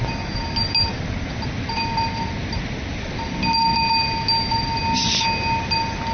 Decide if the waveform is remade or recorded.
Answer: recorded